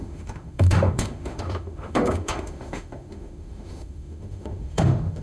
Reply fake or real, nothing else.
fake